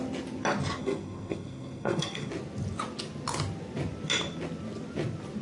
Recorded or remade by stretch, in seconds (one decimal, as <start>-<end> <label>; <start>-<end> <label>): 0.0-0.8 recorded; 0.8-2.3 remade; 2.3-5.4 recorded